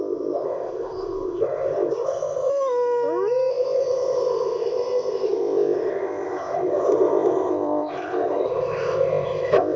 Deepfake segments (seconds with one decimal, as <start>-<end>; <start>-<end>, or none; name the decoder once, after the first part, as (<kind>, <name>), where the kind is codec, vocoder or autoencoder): 0.0-2.5 (codec, ZipCodec); 3.5-9.8